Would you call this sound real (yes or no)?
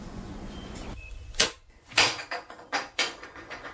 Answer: no